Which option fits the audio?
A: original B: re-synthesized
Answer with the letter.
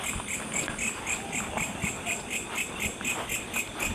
B